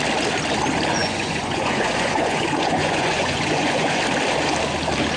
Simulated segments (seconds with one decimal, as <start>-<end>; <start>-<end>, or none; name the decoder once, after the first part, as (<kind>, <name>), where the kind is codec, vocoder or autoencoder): 0.9-4.0 (vocoder, Vocos)